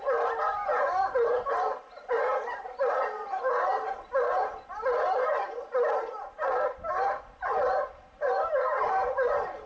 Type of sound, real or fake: real